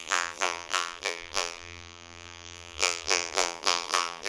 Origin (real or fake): fake